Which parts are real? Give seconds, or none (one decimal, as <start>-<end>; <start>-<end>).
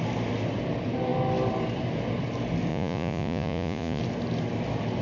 0.0-2.7; 4.0-5.0